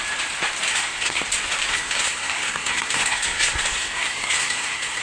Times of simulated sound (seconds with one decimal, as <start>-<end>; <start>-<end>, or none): 0.7-1.2; 1.7-5.0